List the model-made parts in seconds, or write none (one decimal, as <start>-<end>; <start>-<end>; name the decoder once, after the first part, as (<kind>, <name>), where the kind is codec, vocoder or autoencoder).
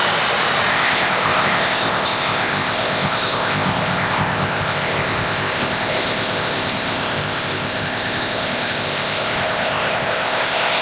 0.7-10.8 (codec, ZipCodec)